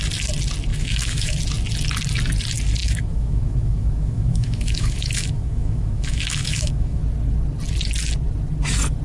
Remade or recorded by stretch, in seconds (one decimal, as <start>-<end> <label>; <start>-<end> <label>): 0.0-0.7 recorded; 0.7-1.4 remade; 1.4-2.8 recorded; 2.8-7.0 remade; 7.0-9.0 recorded